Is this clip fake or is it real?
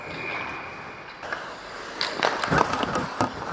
real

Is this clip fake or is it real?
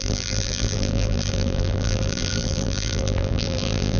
fake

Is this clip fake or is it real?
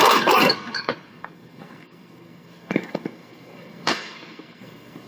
fake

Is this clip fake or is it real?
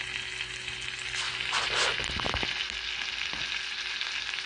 real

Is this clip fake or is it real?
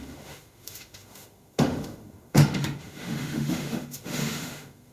fake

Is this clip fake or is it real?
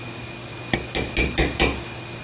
real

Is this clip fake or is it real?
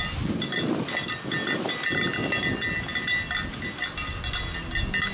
real